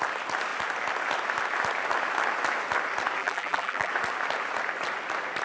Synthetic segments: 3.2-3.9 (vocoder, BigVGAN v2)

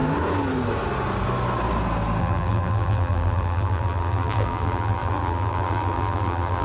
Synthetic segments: 2.2-6.6 (vocoder, BigVGAN v2)